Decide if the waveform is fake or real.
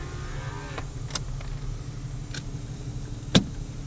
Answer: real